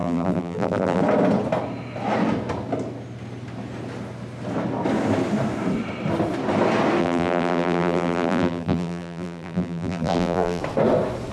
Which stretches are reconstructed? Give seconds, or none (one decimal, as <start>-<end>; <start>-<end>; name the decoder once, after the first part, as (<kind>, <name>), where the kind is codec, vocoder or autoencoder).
0.0-1.0 (vocoder, BigVGAN v2); 7.0-10.6